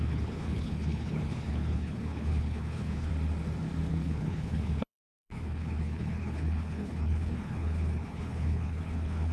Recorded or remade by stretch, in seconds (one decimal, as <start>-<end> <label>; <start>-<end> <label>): 0.0-3.1 remade; 3.1-3.9 recorded; 3.9-9.3 remade

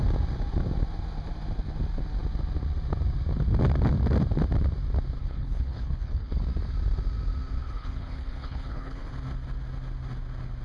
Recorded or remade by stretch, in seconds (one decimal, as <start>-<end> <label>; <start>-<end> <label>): 0.0-5.2 recorded; 5.2-6.4 remade; 6.4-7.6 recorded; 7.6-9.1 remade; 9.1-10.6 recorded

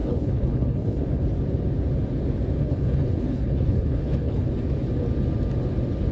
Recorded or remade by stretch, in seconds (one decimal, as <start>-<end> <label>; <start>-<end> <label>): 0.0-1.2 remade; 1.2-2.6 recorded; 2.6-4.5 remade; 4.5-6.1 recorded

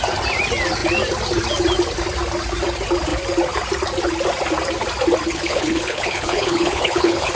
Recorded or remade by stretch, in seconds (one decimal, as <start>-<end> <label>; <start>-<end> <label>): 0.0-5.3 recorded; 5.3-7.3 remade

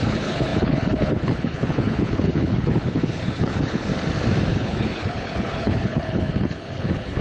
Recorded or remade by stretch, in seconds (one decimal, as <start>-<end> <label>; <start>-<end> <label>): 0.0-3.9 remade; 3.9-4.5 recorded; 4.5-7.2 remade

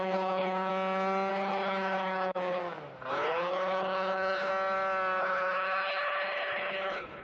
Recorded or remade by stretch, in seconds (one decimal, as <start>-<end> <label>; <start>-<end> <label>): 0.0-0.7 remade; 0.7-1.3 recorded; 1.3-2.6 remade; 2.6-3.1 recorded; 3.1-4.5 remade; 4.5-5.2 recorded; 5.2-7.2 remade